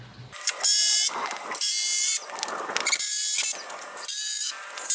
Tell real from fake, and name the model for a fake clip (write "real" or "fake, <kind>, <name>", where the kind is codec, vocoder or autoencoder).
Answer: real